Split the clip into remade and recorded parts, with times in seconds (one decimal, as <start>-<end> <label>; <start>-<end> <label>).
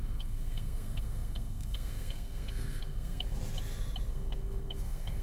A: 0.0-3.4 remade; 3.4-4.1 recorded; 4.1-5.2 remade